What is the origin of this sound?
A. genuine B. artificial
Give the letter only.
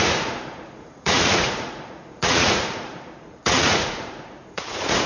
B